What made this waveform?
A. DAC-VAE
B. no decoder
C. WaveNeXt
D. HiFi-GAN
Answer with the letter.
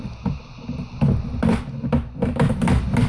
B